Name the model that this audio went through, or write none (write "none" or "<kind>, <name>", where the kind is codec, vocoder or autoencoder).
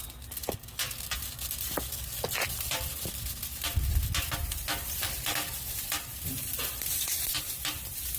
none